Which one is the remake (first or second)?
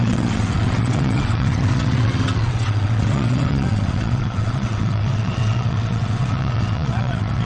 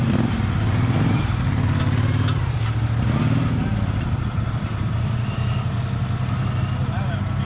first